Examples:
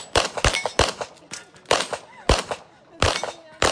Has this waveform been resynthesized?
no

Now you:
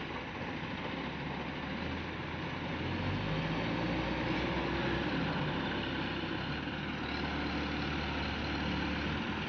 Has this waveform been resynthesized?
no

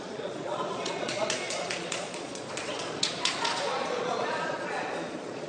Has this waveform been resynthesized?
yes